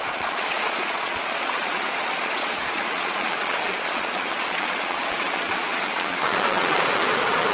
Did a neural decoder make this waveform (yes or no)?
yes